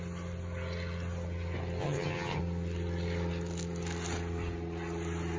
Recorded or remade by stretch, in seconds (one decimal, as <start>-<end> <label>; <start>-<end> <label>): 0.0-1.8 recorded; 1.8-2.4 remade; 2.4-5.4 recorded